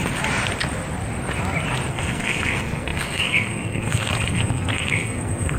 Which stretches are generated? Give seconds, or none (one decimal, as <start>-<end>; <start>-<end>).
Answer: 1.9-5.6